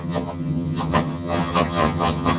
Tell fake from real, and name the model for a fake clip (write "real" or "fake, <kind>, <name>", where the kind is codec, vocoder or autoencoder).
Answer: fake, vocoder, HiFi-GAN